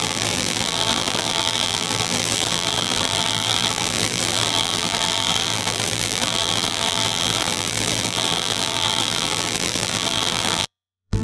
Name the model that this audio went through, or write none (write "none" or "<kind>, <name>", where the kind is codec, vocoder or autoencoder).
vocoder, BigVGAN v2